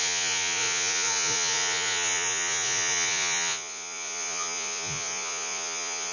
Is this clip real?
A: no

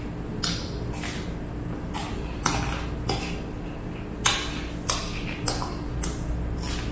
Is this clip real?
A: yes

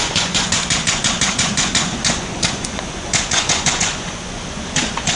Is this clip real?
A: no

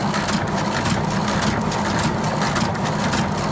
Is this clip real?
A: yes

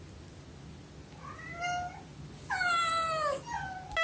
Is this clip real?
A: yes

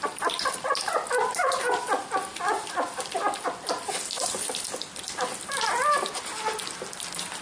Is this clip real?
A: yes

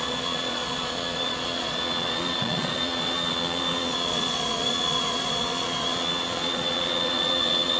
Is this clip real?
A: no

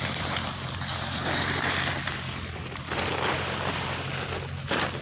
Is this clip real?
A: yes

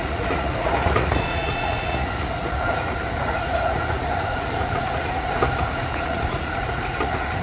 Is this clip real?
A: no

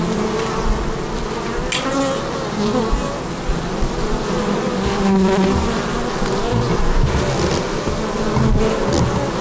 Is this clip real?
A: yes